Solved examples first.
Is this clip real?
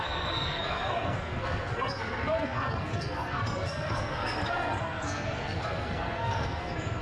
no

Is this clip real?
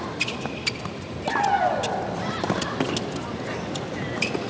yes